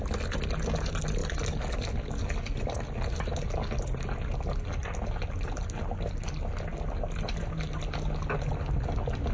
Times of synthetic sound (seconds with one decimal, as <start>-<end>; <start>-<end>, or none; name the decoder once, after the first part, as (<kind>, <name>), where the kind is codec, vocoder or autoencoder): none